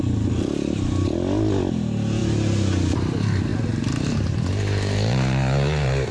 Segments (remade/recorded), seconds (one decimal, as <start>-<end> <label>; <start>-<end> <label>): 0.0-6.1 recorded